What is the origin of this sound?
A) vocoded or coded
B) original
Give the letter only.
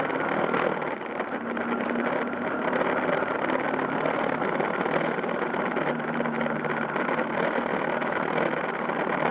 B